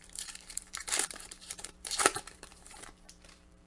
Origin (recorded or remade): remade